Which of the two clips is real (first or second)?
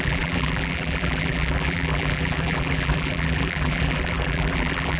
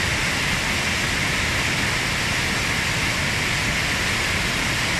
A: second